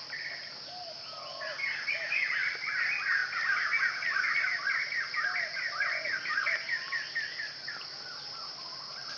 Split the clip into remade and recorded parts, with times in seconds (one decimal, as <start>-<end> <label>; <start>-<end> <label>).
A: 0.0-9.2 recorded